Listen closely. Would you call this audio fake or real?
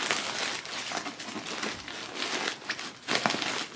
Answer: real